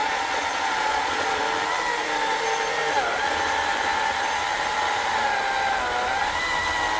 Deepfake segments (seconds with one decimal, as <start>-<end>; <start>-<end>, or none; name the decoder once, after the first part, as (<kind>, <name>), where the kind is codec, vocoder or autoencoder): 0.0-1.4 (vocoder, Vocos)